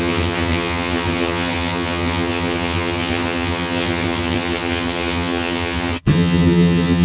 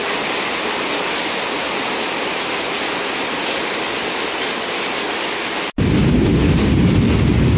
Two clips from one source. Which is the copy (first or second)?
first